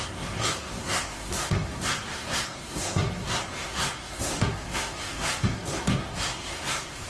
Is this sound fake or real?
fake